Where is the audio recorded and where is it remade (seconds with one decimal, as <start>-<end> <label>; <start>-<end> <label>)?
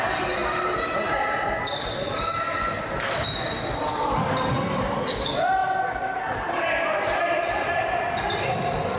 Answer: 0.0-9.0 recorded